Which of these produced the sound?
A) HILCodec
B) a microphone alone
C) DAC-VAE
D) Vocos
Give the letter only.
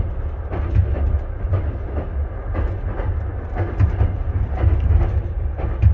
B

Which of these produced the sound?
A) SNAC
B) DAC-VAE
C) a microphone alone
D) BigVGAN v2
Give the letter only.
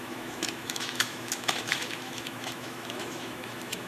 B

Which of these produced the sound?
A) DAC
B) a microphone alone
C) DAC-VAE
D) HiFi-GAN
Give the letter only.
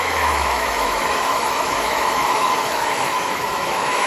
C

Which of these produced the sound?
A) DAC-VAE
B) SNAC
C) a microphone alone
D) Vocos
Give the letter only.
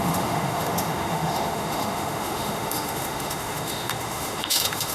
A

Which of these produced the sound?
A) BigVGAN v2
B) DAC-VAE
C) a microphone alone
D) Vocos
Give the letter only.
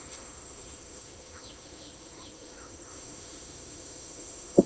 B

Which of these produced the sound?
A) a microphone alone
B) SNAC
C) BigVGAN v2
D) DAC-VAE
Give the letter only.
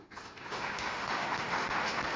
D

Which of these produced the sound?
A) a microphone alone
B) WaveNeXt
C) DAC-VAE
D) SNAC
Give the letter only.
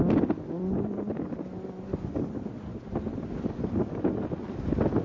A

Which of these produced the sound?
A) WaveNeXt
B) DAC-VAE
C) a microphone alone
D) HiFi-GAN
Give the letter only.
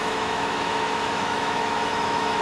B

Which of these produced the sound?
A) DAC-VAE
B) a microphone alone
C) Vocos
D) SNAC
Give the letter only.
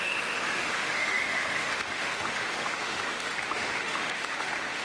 A